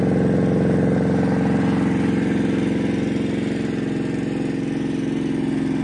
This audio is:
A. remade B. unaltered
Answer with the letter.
B